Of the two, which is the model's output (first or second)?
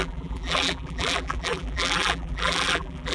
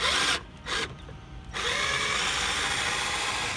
first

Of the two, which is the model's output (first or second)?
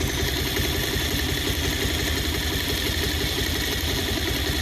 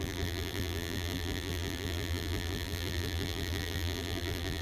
second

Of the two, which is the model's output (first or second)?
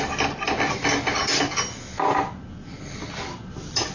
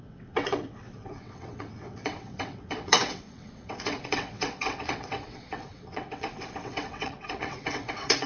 second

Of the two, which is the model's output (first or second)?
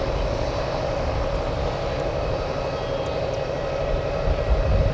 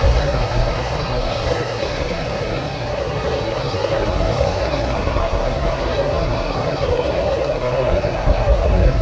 second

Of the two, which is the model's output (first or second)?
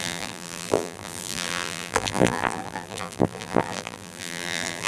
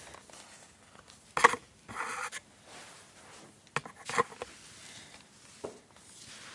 first